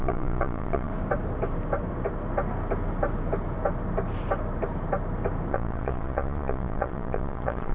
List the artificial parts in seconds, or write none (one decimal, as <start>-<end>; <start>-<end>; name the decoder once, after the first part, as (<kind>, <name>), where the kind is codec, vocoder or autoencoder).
0.0-0.9 (vocoder, Vocos); 5.5-7.7